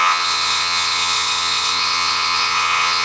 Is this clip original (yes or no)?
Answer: no